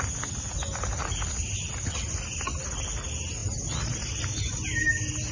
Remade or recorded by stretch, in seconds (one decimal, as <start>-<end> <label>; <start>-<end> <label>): 0.0-5.3 recorded